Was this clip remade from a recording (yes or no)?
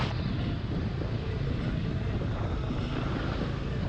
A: no